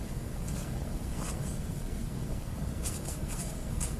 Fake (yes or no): yes